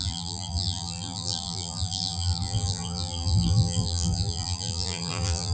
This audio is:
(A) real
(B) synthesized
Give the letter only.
B